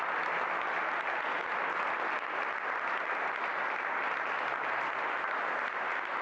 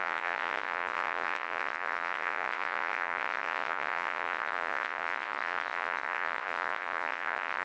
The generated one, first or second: second